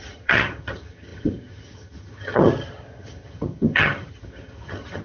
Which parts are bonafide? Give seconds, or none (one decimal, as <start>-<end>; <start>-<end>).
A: none

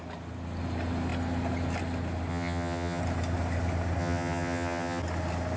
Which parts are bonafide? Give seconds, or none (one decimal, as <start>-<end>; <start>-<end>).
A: 0.0-2.3; 3.0-4.0; 5.0-5.6

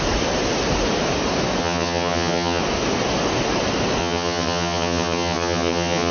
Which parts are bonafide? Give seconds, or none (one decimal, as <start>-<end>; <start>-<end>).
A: 0.0-1.6; 2.6-4.0

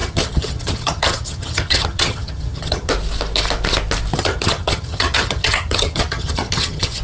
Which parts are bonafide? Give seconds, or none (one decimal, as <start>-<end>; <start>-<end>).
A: 2.9-4.1

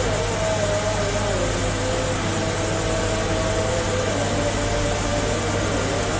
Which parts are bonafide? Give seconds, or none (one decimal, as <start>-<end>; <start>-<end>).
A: 0.0-6.2

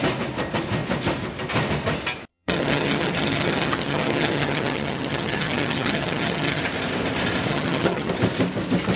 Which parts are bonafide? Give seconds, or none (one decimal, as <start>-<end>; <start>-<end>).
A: 0.0-2.3; 6.6-7.5; 8.1-9.0

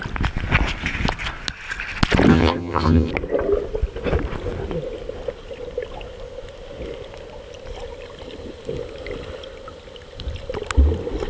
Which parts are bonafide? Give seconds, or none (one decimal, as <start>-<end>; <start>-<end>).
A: 0.0-2.3; 3.1-11.3

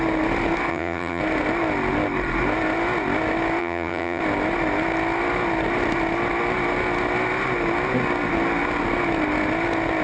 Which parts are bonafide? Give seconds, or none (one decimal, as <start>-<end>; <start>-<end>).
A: 0.0-0.7; 1.2-3.6; 4.2-10.0